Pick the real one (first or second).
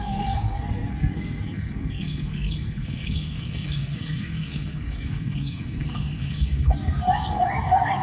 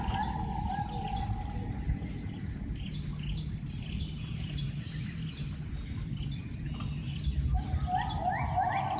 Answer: second